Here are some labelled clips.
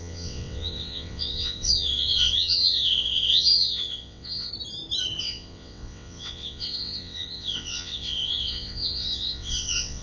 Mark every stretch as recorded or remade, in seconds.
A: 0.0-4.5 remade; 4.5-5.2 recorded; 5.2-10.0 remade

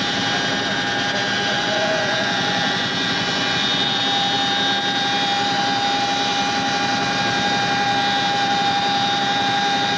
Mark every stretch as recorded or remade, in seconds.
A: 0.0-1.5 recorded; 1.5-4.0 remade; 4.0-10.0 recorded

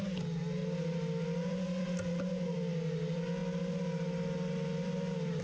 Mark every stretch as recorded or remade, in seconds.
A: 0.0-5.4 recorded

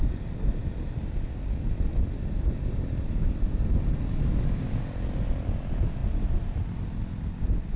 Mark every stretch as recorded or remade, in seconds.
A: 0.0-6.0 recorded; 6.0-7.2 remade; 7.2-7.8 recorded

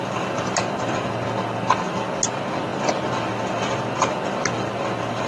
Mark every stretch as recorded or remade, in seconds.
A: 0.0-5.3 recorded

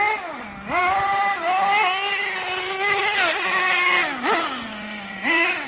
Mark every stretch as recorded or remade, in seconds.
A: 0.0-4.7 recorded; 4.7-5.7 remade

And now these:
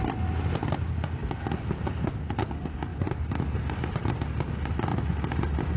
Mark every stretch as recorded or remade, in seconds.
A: 0.0-5.8 recorded

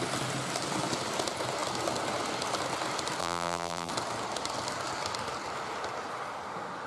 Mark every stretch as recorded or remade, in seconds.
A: 0.0-3.2 recorded; 3.2-3.9 remade; 3.9-6.9 recorded